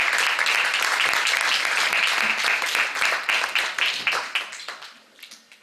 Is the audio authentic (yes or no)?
yes